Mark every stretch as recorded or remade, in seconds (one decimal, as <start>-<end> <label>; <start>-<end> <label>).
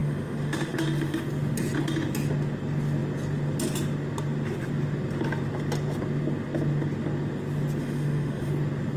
0.0-1.2 remade; 1.2-7.8 recorded; 7.8-8.5 remade; 8.5-9.0 recorded